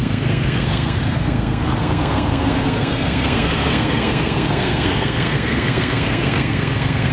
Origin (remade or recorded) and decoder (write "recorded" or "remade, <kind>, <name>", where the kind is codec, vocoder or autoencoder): remade, codec, SNAC